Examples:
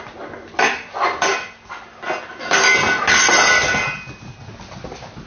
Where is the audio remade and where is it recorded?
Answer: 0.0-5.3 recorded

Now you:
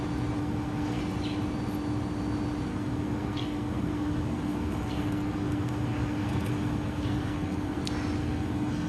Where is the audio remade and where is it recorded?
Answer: 0.0-0.4 recorded; 0.4-1.0 remade; 1.0-2.7 recorded; 2.7-7.8 remade; 7.8-8.2 recorded; 8.2-8.9 remade

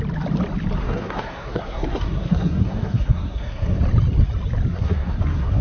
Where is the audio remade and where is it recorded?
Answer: 0.0-0.8 recorded; 0.8-3.8 remade; 3.8-4.7 recorded; 4.7-5.6 remade

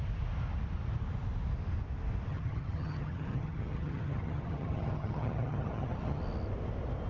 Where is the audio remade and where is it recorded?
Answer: 0.0-2.3 recorded; 2.3-6.2 remade; 6.2-7.1 recorded

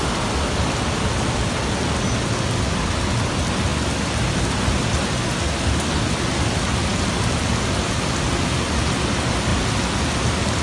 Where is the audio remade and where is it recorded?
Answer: 0.0-3.7 recorded; 3.7-4.9 remade; 4.9-6.9 recorded; 6.9-8.8 remade; 8.8-10.6 recorded

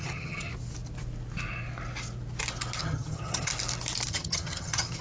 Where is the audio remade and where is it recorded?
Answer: 0.0-0.5 remade; 0.5-2.8 recorded; 2.8-3.5 remade; 3.5-4.1 recorded; 4.1-5.0 remade

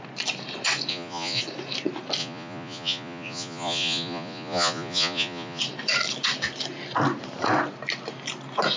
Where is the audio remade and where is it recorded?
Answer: 0.0-0.9 recorded; 0.9-1.4 remade; 1.4-2.2 recorded; 2.2-5.6 remade; 5.6-8.8 recorded

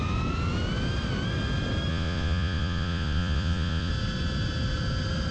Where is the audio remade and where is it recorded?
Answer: 0.0-1.9 recorded; 1.9-3.9 remade; 3.9-5.3 recorded